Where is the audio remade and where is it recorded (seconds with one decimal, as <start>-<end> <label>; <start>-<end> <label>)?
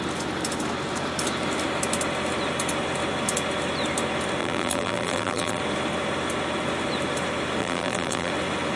0.0-4.4 recorded; 4.4-5.6 remade; 5.6-7.6 recorded; 7.6-8.3 remade; 8.3-8.8 recorded